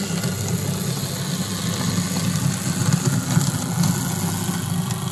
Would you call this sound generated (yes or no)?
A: no